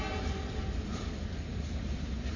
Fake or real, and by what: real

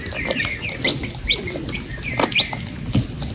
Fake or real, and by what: real